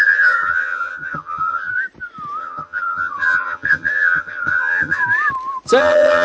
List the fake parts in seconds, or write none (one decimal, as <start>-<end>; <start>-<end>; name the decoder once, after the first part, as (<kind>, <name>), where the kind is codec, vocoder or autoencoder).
0.0-1.7 (vocoder, HiFi-GAN); 2.4-5.0; 5.8-6.2